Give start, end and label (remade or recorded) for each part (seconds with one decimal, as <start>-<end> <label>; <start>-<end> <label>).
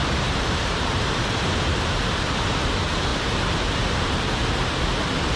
0.0-2.0 remade; 2.0-3.1 recorded; 3.1-4.7 remade; 4.7-5.4 recorded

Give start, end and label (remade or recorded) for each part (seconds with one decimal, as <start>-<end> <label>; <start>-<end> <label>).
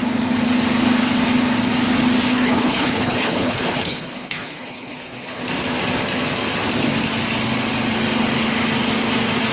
0.0-2.3 recorded; 2.3-5.4 remade; 5.4-9.5 recorded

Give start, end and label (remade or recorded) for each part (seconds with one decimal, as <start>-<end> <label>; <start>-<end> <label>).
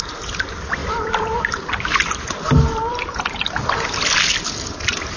0.0-0.8 recorded; 0.8-3.9 remade; 3.9-5.2 recorded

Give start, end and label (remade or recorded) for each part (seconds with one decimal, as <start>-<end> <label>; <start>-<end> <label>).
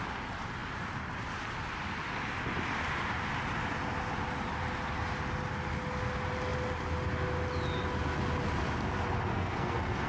0.0-9.3 recorded; 9.3-10.1 remade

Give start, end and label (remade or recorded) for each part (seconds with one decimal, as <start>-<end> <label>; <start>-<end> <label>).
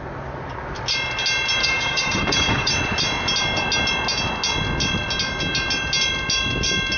0.0-1.6 recorded; 1.6-2.7 remade; 2.7-7.0 recorded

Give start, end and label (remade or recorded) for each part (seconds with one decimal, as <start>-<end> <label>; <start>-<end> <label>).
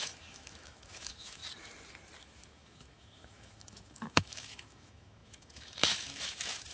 0.0-1.4 remade; 1.4-2.2 recorded; 2.2-6.7 remade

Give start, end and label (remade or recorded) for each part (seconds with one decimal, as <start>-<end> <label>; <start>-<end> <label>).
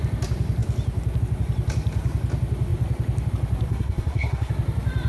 0.0-3.7 recorded; 3.7-4.5 remade; 4.5-5.1 recorded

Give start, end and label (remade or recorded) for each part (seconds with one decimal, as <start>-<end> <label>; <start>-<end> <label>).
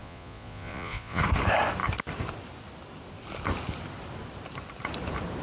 0.0-1.2 remade; 1.2-5.4 recorded